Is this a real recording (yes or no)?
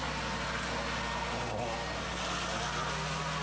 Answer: yes